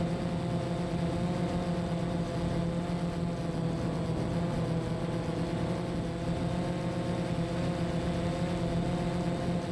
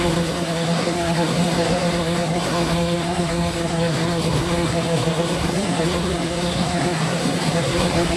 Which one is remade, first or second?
second